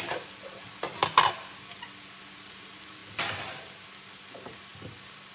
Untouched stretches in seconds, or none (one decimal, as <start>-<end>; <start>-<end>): 0.0-5.3